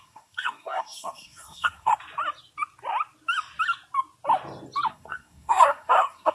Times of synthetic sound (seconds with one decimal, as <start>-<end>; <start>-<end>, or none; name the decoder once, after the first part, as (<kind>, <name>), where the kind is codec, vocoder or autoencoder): 0.0-1.9 (codec, SNAC); 4.9-6.3